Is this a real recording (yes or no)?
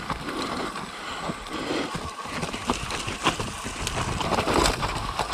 no